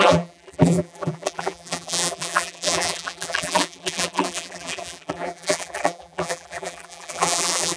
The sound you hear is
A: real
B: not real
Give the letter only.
B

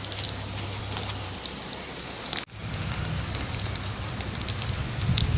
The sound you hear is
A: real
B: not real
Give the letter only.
A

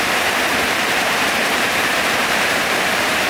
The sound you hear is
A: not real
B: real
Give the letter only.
A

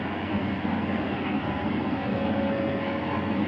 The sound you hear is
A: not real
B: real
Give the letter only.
A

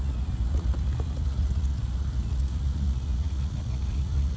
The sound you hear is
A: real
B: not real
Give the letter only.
B